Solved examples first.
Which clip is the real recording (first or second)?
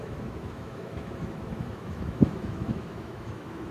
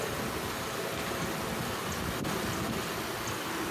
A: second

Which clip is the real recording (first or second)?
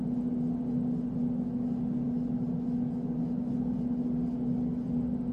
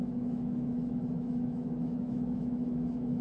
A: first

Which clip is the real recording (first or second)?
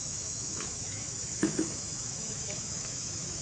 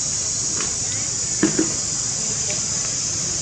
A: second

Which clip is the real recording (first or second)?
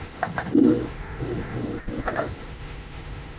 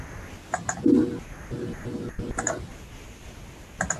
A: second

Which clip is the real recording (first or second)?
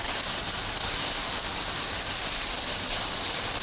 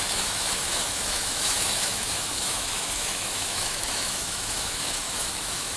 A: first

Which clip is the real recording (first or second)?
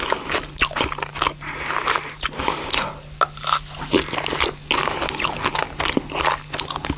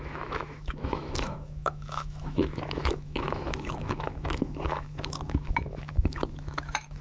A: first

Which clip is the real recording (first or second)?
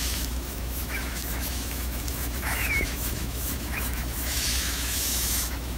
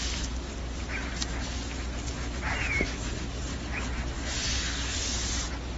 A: second